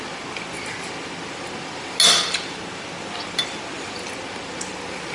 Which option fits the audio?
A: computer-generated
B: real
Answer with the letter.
B